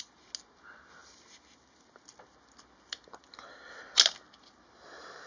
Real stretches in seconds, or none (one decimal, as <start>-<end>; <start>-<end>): 0.0-5.3